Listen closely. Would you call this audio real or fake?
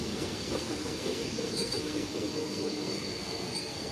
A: fake